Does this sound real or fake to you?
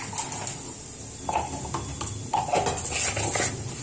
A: real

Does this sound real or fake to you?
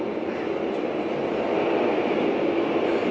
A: fake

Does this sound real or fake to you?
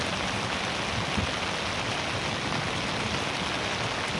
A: real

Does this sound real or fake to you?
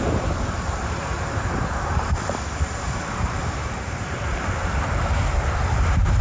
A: fake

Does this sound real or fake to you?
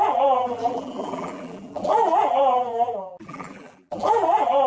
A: fake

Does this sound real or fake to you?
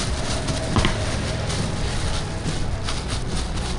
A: real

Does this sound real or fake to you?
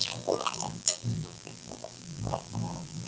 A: fake